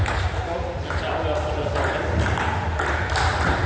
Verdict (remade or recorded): recorded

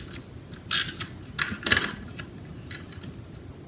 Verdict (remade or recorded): recorded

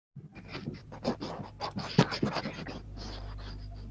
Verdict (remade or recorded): recorded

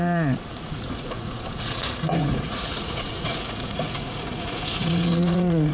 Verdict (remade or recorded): remade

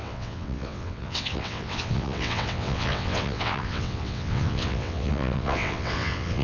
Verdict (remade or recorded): remade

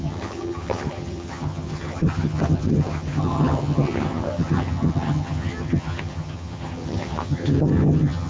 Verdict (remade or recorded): remade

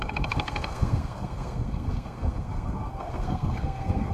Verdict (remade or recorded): remade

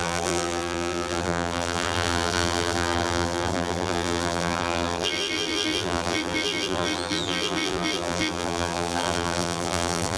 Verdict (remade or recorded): remade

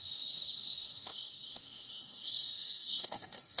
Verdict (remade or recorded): remade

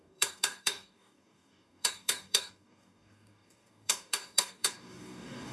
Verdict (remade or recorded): remade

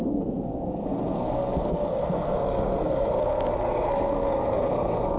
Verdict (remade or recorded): remade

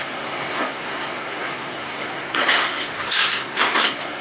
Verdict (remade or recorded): remade